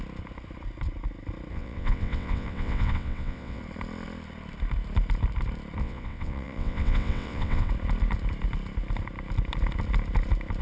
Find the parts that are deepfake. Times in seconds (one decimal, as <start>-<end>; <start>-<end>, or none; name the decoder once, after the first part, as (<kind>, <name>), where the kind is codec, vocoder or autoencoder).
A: 1.5-3.6 (vocoder, WaveNeXt); 5.8-7.7